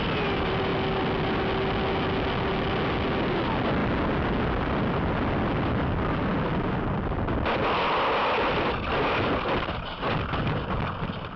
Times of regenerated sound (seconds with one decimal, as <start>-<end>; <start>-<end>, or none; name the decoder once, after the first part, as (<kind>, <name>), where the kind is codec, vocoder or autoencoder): 0.0-0.7 (vocoder, BigVGAN v2); 3.2-3.8; 4.6-11.4